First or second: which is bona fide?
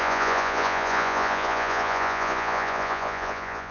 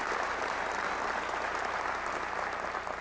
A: second